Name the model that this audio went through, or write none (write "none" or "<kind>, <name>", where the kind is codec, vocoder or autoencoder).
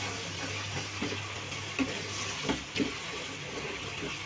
none